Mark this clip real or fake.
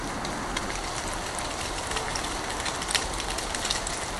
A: real